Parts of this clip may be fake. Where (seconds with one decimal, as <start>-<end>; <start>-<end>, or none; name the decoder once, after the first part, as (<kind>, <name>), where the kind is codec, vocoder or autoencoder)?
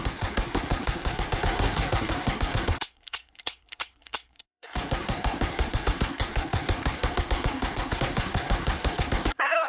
0.0-9.7 (codec, SNAC)